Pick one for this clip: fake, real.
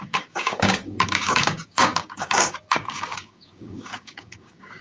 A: fake